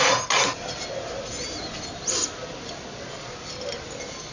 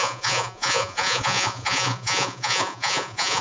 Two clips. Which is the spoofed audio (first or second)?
second